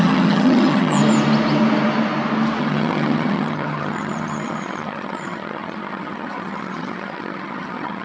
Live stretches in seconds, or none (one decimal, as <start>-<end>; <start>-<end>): 1.0-2.6